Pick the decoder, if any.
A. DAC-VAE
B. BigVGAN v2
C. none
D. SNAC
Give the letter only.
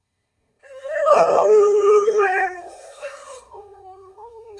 D